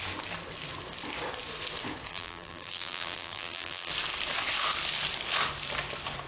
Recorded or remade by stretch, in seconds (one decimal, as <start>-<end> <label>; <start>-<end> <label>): 0.0-2.1 recorded; 2.1-3.9 remade; 3.9-6.3 recorded